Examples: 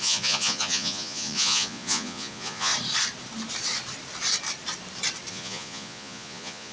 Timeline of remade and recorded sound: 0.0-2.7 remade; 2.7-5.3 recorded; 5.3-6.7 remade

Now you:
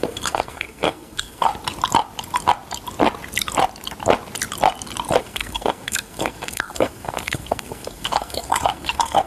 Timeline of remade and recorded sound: 0.0-1.5 remade; 1.5-5.2 recorded; 5.2-9.3 remade

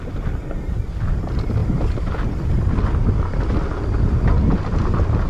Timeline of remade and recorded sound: 0.0-5.3 recorded

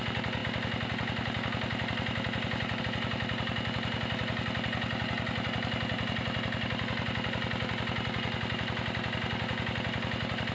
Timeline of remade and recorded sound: 0.0-10.5 recorded

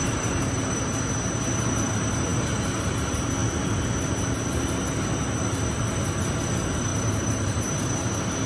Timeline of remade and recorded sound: 0.0-1.1 remade; 1.1-6.9 recorded; 6.9-7.6 remade; 7.6-8.5 recorded